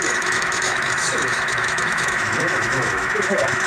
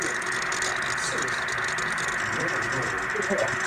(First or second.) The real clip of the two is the second